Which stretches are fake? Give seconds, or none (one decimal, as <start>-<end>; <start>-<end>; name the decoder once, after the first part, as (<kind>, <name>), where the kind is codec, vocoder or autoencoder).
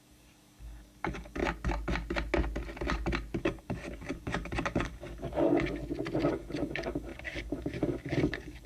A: 0.0-1.4 (codec, DAC); 3.4-5.8; 6.3-8.7